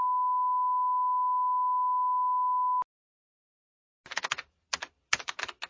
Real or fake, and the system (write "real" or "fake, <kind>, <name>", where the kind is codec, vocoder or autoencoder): real